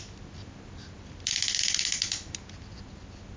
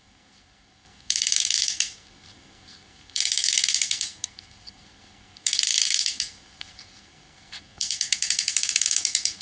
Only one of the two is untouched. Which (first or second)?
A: first